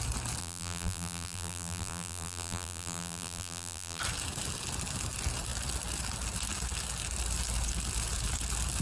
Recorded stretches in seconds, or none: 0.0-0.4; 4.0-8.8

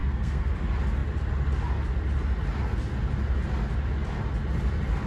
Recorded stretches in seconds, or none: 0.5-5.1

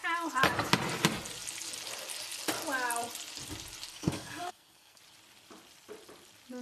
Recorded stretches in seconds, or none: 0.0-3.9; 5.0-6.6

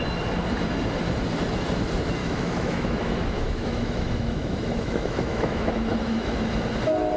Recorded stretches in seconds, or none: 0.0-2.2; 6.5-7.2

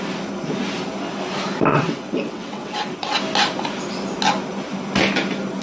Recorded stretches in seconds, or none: 0.0-1.7; 3.2-5.6